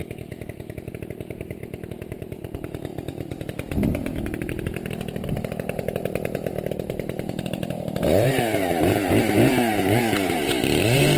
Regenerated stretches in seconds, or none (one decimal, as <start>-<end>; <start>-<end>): 0.9-2.9; 6.7-11.2